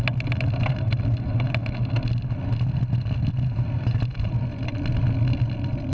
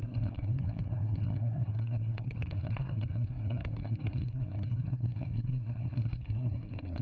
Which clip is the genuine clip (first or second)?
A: first